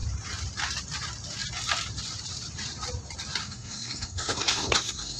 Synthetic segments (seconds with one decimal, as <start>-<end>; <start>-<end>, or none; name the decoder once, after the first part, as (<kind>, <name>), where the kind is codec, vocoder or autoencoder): 3.4-5.2 (codec, SNAC)